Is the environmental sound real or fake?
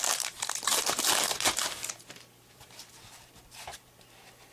fake